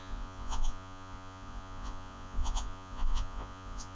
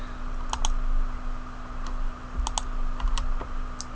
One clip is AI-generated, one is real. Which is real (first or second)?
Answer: second